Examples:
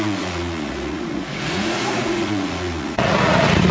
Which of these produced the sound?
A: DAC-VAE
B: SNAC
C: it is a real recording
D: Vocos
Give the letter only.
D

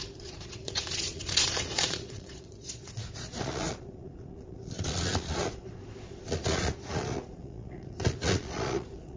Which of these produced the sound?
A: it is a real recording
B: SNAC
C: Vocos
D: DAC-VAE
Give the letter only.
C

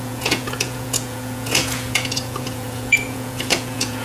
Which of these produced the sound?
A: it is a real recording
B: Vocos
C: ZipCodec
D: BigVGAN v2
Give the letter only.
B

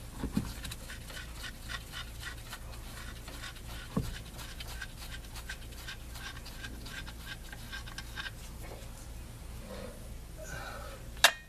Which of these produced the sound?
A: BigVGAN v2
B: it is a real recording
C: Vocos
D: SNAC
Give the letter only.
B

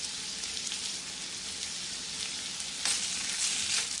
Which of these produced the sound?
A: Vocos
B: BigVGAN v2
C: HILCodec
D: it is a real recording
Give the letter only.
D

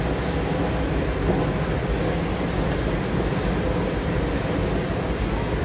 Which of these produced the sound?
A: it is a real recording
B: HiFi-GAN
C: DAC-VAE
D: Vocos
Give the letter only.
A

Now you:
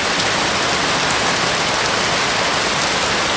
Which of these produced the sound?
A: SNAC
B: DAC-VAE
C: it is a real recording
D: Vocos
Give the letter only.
C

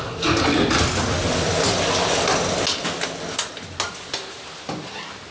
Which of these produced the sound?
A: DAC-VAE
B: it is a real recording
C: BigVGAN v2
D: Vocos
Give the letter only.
B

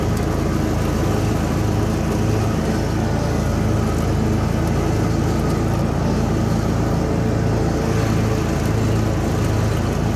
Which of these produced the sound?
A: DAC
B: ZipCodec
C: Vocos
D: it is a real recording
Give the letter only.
D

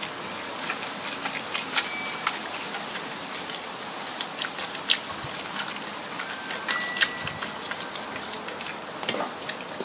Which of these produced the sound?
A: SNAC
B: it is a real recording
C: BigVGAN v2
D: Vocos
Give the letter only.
B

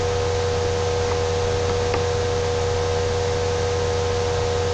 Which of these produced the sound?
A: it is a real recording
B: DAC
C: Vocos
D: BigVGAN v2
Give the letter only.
A